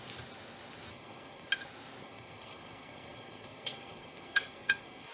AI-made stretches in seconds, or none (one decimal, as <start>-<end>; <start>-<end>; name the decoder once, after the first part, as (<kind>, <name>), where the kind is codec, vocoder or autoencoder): 0.9-1.5 (codec, SNAC); 2.0-5.1